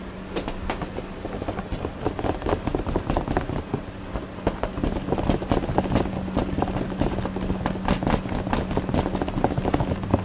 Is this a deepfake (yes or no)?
no